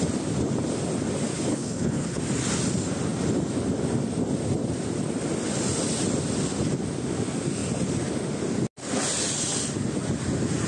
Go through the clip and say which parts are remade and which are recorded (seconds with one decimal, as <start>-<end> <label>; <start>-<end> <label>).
0.0-1.5 recorded; 1.5-2.2 remade; 2.2-10.7 recorded